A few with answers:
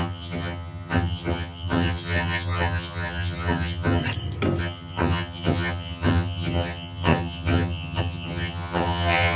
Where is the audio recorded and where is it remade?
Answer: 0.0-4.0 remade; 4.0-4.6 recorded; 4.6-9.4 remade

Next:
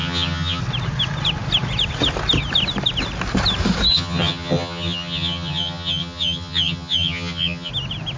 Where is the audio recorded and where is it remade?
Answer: 0.0-0.6 remade; 0.6-3.9 recorded; 3.9-7.7 remade; 7.7-8.2 recorded

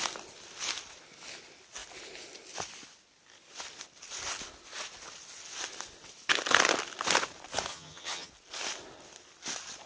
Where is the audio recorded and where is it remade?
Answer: 0.0-7.7 recorded; 7.7-8.3 remade; 8.3-9.9 recorded